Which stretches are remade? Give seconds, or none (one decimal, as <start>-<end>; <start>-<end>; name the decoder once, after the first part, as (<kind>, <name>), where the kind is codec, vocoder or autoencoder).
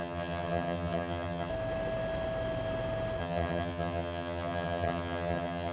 0.0-1.5 (vocoder, HiFi-GAN); 3.2-5.7